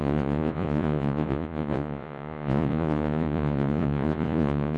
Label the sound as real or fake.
fake